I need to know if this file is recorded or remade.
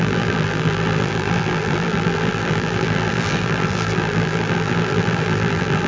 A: remade